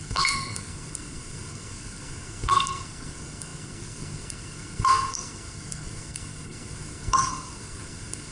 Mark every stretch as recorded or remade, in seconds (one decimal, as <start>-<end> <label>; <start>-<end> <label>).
0.0-8.3 remade